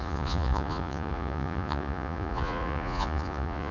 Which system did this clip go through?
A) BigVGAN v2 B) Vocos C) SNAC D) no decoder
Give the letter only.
B